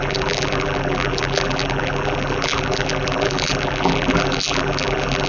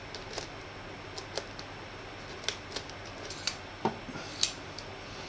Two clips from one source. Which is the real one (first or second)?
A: second